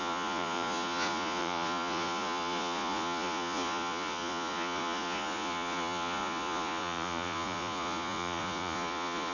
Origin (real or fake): fake